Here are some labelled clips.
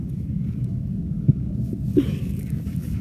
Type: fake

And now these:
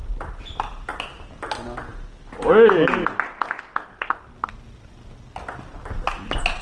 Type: real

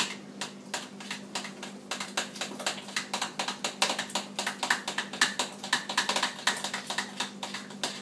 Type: real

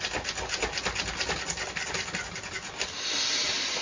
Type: real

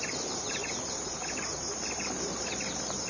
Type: real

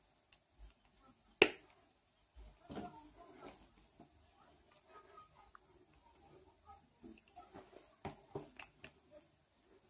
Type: real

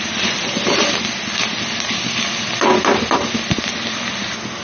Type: real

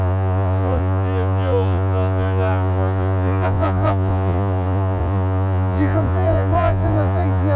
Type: fake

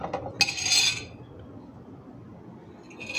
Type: real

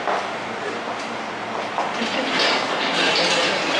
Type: real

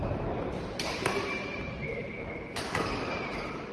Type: fake